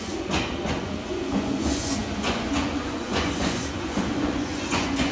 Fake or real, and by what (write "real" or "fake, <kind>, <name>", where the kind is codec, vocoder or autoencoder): fake, vocoder, Vocos